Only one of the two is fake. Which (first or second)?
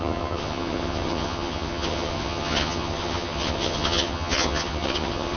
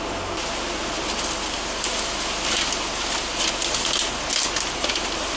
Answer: first